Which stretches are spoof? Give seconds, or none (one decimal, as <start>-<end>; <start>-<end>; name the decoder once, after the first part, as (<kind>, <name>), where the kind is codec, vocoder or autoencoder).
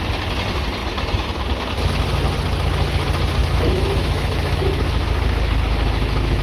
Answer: 3.4-6.4 (autoencoder, DAC-VAE)